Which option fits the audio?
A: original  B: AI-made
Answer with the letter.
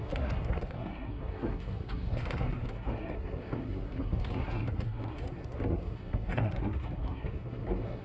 B